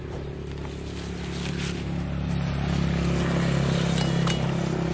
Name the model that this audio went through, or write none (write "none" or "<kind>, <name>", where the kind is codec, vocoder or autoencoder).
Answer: none